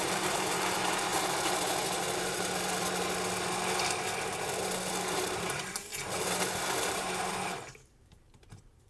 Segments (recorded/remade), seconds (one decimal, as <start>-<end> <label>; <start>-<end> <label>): 0.0-1.1 remade; 1.1-4.9 recorded; 4.9-5.9 remade; 5.9-6.9 recorded; 6.9-8.9 remade